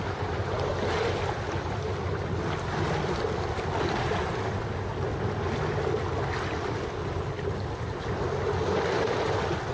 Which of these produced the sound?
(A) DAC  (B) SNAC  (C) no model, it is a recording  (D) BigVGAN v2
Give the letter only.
C